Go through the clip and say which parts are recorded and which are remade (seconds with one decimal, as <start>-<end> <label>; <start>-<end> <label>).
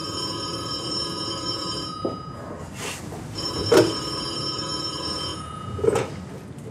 0.0-5.3 recorded; 5.3-6.1 remade; 6.1-6.7 recorded